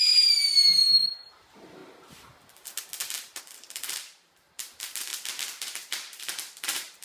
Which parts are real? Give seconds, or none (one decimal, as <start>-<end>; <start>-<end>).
1.8-3.4; 5.1-5.6